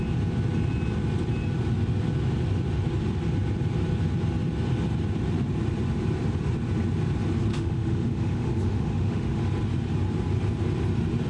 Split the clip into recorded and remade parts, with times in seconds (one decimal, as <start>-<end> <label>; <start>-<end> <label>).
0.0-7.5 recorded; 7.5-9.4 remade; 9.4-11.3 recorded